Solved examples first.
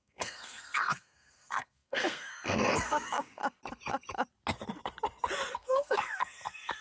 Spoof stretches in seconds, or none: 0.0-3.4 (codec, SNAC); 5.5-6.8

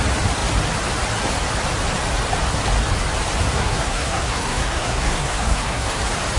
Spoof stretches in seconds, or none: 3.5-6.0 (codec, SNAC)

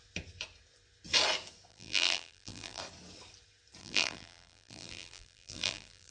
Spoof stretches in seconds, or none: 1.7-2.8 (vocoder, BigVGAN v2); 3.8-6.1